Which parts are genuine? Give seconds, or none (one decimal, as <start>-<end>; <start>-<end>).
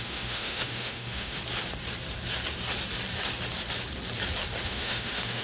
1.4-4.6